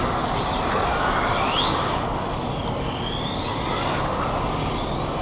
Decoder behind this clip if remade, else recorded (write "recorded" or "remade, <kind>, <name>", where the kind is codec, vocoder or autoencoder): recorded